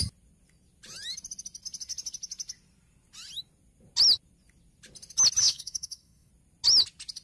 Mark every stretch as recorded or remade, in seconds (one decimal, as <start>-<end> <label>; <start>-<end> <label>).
0.0-5.4 recorded; 5.4-6.3 remade; 6.3-7.2 recorded